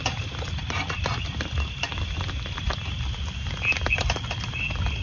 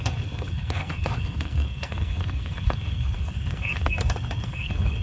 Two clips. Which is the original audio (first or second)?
first